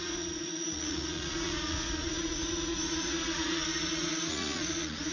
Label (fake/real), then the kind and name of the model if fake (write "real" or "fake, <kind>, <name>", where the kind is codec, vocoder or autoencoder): fake, vocoder, Vocos